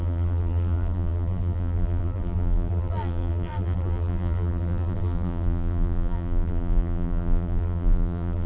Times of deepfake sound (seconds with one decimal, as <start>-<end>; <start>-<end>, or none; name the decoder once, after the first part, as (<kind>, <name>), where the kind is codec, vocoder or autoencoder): 0.0-8.5 (vocoder, BigVGAN v2)